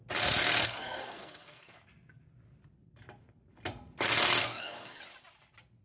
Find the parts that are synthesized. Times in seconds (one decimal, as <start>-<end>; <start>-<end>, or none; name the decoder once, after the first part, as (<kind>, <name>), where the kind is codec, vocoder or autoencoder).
0.6-1.8 (codec, SNAC); 4.4-5.0